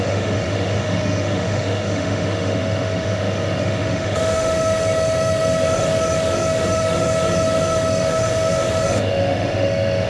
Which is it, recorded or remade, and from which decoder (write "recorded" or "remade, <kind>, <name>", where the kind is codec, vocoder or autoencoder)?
remade, autoencoder, DAC-VAE